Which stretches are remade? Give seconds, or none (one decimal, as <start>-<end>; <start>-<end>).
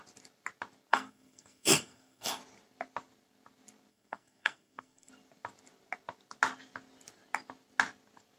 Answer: 0.9-2.4; 3.9-5.1